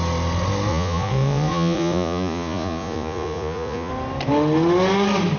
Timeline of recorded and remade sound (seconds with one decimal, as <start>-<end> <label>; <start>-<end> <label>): 0.0-0.7 recorded; 0.7-3.9 remade; 3.9-5.4 recorded